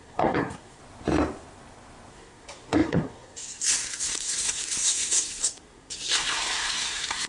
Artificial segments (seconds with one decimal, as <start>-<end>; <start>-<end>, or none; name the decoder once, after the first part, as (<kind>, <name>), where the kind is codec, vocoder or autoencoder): 0.0-0.8 (codec, SNAC); 2.1-7.3